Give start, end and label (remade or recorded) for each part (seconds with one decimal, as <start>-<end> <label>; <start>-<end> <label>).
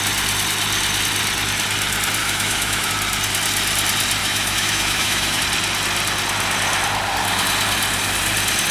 0.0-2.2 recorded; 2.2-2.9 remade; 2.9-4.2 recorded; 4.2-5.4 remade; 5.4-8.7 recorded